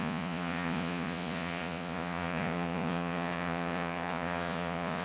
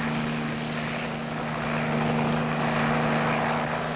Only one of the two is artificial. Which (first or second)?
first